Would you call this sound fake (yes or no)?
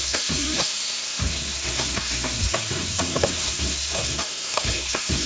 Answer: yes